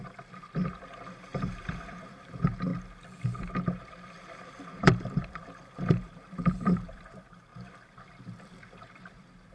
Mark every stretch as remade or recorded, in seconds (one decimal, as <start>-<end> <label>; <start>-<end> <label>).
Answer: 0.0-2.7 remade; 2.7-3.8 recorded; 3.8-9.5 remade